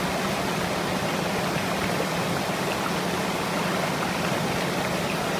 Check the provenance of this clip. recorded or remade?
recorded